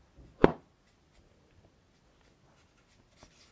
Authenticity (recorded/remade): recorded